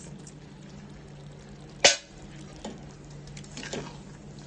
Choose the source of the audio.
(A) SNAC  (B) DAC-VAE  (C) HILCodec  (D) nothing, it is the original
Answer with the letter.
D